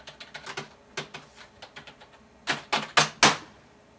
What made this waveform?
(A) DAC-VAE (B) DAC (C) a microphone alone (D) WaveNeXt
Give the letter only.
C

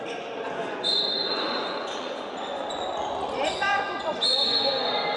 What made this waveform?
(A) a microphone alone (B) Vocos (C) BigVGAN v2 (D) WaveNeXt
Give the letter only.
B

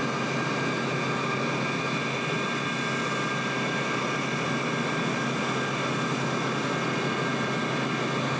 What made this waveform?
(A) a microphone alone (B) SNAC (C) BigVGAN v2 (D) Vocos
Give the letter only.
A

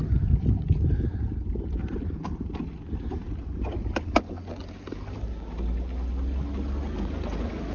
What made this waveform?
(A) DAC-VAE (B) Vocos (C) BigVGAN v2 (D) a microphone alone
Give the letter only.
D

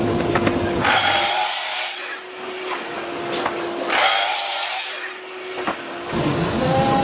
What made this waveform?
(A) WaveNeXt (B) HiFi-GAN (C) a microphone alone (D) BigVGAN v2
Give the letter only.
C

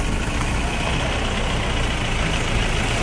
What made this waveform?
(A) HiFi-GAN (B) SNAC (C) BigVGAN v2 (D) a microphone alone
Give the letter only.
D